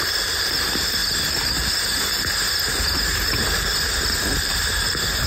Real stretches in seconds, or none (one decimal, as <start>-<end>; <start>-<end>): 1.0-4.0